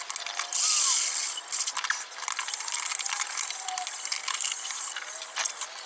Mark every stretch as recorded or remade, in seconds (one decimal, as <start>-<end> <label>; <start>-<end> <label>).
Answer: 0.0-5.9 recorded